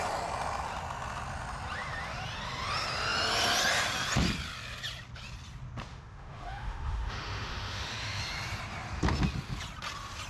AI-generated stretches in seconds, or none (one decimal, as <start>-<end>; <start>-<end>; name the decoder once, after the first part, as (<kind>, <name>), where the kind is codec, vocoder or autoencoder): 5.9-8.2 (autoencoder, DAC-VAE)